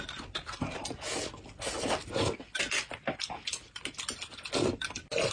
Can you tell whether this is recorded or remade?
recorded